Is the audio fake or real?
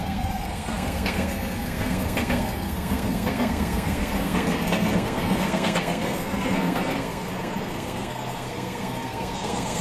fake